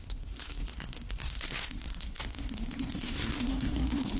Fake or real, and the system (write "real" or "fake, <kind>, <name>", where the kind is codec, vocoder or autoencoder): fake, codec, SNAC